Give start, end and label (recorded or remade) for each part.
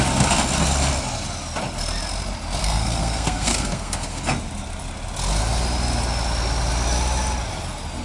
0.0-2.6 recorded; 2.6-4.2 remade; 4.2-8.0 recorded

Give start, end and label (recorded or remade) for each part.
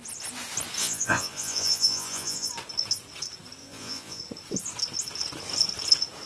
0.0-0.8 recorded; 0.8-2.5 remade; 2.5-3.6 recorded; 3.6-4.2 remade; 4.2-6.3 recorded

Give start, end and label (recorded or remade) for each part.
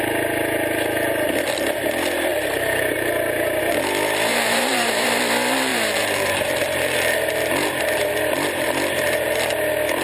0.0-4.3 recorded; 4.3-5.2 remade; 5.2-10.0 recorded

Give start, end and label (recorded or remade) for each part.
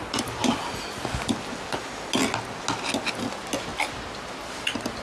0.0-5.0 recorded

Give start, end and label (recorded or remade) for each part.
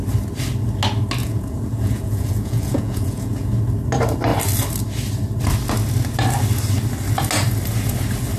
0.0-1.2 recorded; 1.2-3.5 remade; 3.5-8.4 recorded